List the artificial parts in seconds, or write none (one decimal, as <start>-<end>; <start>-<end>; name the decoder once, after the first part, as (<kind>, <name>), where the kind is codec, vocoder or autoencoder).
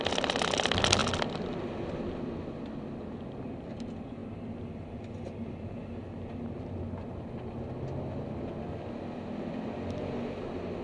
none